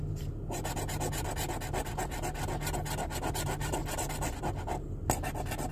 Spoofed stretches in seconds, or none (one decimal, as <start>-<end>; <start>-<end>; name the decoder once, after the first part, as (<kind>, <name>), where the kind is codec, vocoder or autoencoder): 3.8-4.4 (vocoder, BigVGAN v2)